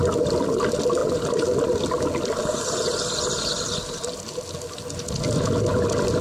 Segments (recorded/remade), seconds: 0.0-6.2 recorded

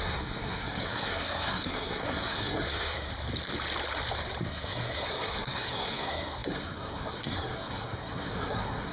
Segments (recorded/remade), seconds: 0.0-3.1 remade; 3.1-4.4 recorded; 4.4-8.9 remade

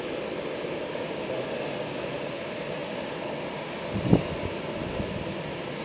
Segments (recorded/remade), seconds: 0.0-5.8 recorded

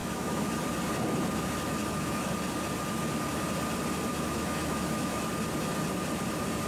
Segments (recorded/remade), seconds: 0.0-0.5 remade; 0.5-1.8 recorded; 1.8-2.3 remade; 2.3-4.1 recorded; 4.1-5.3 remade; 5.3-6.7 recorded

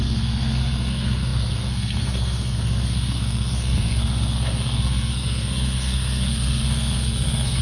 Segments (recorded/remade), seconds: 0.0-7.6 remade

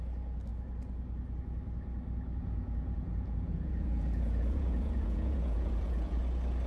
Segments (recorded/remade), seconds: 0.0-2.4 recorded; 2.4-6.2 remade; 6.2-6.7 recorded

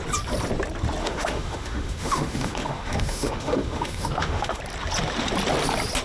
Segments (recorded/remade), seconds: 0.0-1.0 recorded; 1.0-4.6 remade; 4.6-6.0 recorded

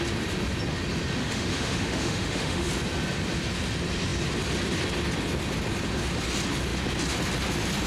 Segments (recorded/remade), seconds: 0.0-1.2 recorded; 1.2-2.7 remade; 2.7-7.9 recorded